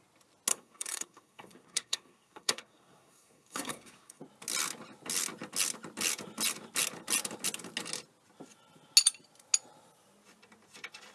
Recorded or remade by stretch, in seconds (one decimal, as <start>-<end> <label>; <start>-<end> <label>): 0.0-0.5 recorded; 0.5-4.2 remade; 4.2-11.1 recorded